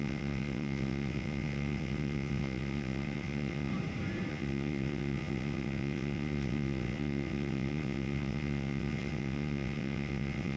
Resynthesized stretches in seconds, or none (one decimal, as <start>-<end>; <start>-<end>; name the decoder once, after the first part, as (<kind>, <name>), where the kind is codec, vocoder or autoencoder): 0.0-3.7 (vocoder, WaveNeXt); 4.3-10.6